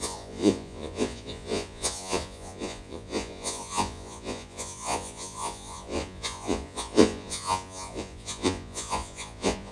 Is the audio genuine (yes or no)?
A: no